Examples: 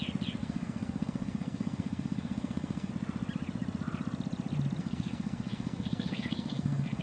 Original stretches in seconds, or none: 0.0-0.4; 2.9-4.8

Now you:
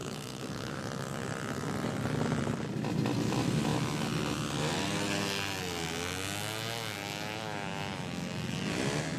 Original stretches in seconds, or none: 0.8-9.2

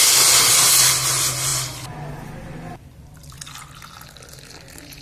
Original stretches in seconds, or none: 0.0-5.0